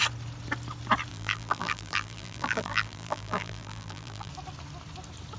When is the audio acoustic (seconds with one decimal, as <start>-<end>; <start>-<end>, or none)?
0.0-1.1; 4.3-5.4